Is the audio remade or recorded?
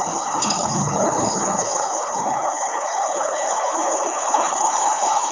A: remade